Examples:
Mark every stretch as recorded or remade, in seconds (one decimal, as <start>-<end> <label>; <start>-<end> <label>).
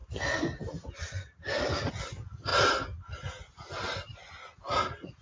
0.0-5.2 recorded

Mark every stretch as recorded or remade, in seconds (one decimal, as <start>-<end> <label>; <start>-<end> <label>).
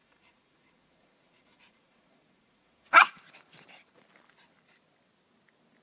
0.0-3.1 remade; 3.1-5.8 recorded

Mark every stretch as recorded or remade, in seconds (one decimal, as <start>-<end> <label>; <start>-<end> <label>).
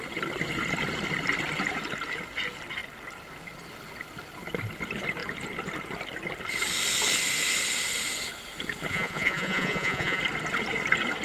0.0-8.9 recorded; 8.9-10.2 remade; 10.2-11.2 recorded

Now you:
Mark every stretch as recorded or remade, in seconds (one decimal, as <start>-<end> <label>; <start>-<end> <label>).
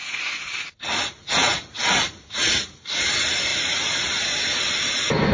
0.0-2.7 remade; 2.7-3.5 recorded; 3.5-4.2 remade; 4.2-5.3 recorded